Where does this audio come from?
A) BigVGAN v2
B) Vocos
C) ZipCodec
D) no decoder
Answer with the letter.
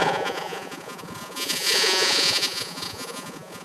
B